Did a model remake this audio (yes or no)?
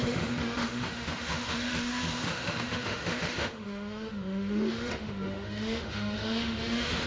yes